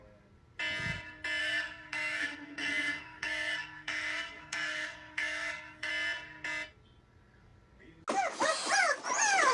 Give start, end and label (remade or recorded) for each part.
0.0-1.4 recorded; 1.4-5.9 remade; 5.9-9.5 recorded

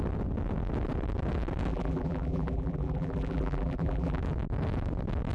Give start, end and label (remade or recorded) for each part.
0.0-1.7 recorded; 1.7-4.2 remade; 4.2-5.3 recorded

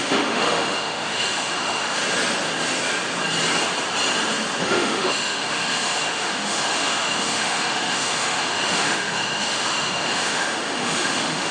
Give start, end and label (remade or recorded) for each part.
0.0-2.0 remade; 2.0-4.6 recorded; 4.6-11.5 remade

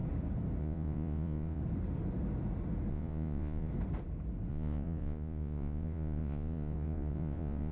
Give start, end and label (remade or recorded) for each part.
0.0-0.6 recorded; 0.6-1.6 remade; 1.6-2.9 recorded; 2.9-3.7 remade; 3.7-4.5 recorded; 4.5-7.7 remade

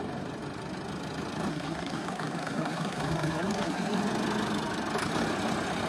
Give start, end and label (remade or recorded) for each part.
0.0-1.5 recorded; 1.5-4.0 remade; 4.0-5.9 recorded

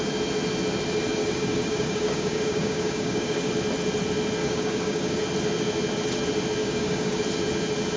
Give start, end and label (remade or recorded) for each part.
0.0-1.2 recorded; 1.2-3.5 remade; 3.5-4.4 recorded; 4.4-5.2 remade; 5.2-6.6 recorded; 6.6-7.2 remade; 7.2-8.0 recorded

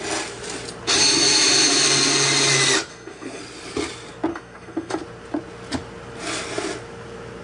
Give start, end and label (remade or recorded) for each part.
0.0-2.9 recorded; 2.9-3.4 remade; 3.4-4.3 recorded; 4.3-5.0 remade; 5.0-7.4 recorded

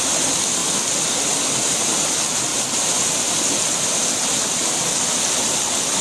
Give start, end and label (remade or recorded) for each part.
0.0-6.0 recorded